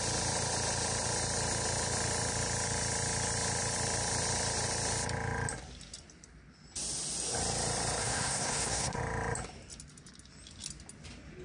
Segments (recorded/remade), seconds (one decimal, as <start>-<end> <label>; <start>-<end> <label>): 0.0-8.0 recorded; 8.0-9.0 remade; 9.0-11.4 recorded